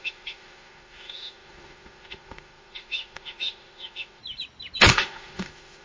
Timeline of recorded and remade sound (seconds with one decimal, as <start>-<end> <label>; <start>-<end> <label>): 0.0-4.2 remade; 4.2-4.9 recorded; 4.9-5.8 remade